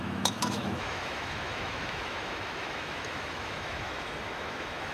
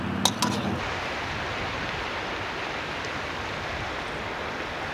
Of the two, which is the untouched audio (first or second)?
second